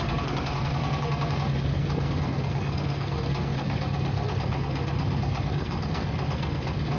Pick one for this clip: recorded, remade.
remade